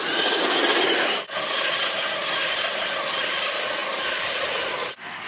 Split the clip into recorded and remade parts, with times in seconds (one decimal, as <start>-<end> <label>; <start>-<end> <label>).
0.0-5.3 recorded